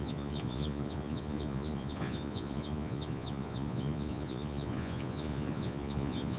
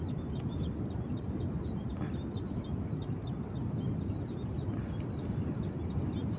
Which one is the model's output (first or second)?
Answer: first